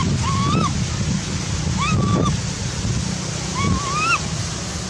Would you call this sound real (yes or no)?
yes